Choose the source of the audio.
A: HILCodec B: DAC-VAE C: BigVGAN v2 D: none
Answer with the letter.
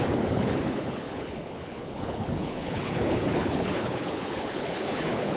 A